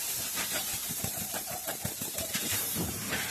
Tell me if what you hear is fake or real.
fake